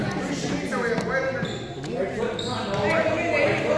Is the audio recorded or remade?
recorded